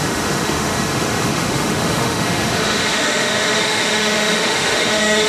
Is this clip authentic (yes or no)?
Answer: no